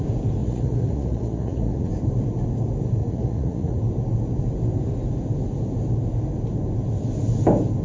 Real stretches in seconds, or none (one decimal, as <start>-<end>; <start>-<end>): 0.0-0.4; 1.9-3.0; 3.8-7.8